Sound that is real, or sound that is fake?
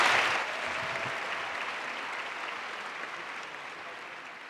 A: real